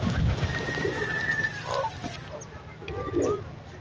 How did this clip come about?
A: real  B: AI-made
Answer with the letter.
A